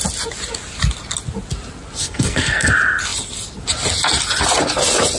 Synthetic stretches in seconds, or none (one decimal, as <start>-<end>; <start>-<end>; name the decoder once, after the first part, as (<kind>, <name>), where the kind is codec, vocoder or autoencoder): 2.0-2.7 (codec, SNAC)

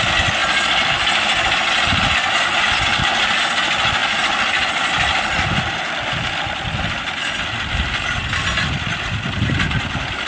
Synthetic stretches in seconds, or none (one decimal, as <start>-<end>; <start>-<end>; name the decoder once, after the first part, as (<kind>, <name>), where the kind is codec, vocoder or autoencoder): none

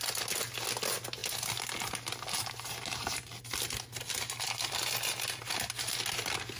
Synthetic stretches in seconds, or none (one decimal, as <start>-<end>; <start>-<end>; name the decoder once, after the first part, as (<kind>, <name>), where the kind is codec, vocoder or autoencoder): none

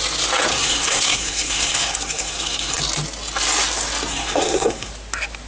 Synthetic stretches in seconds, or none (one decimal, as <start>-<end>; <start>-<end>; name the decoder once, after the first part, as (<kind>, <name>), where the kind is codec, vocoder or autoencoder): 0.5-2.8 (codec, SNAC); 4.1-4.9